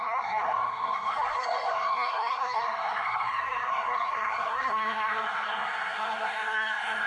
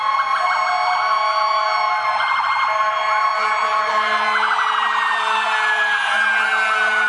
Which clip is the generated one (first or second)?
first